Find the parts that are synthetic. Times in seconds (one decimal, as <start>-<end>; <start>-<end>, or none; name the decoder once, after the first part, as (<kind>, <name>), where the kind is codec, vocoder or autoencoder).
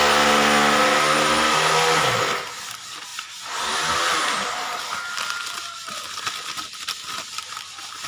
3.1-4.8 (vocoder, BigVGAN v2)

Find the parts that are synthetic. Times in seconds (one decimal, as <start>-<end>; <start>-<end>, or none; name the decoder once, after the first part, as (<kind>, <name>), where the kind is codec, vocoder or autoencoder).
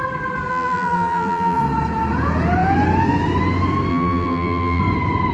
0.5-1.6 (vocoder, BigVGAN v2); 3.9-4.8